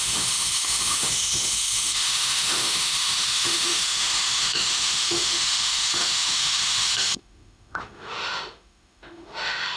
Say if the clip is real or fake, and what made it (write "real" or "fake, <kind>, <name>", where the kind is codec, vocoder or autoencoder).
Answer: fake, autoencoder, DAC-VAE